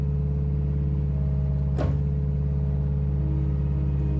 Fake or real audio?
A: real